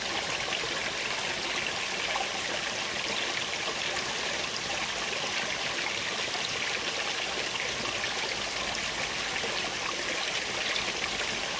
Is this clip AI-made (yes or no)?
no